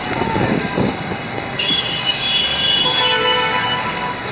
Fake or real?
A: fake